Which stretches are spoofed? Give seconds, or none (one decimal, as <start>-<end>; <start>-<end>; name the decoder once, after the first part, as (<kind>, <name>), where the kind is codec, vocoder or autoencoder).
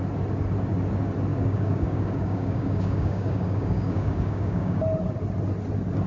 1.3-4.8 (codec, DAC)